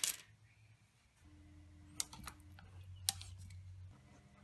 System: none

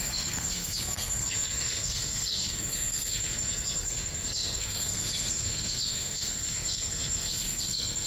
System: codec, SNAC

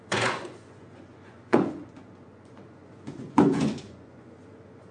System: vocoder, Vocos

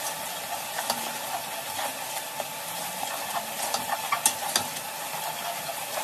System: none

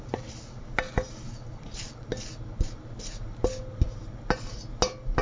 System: none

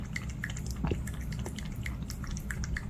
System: none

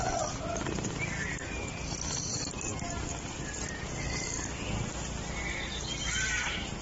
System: vocoder, BigVGAN v2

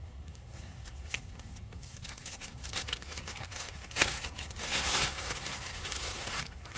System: codec, SNAC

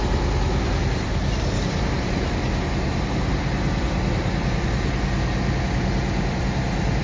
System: vocoder, BigVGAN v2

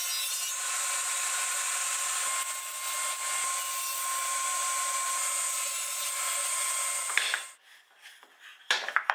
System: none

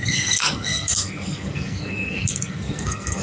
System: codec, SNAC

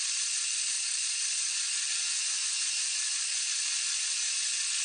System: none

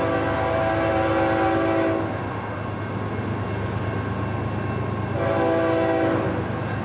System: none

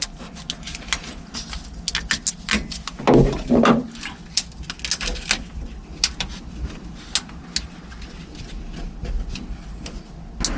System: none